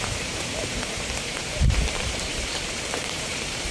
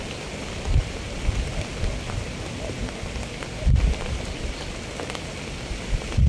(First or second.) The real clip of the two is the second